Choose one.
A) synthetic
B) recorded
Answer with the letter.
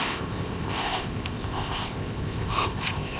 A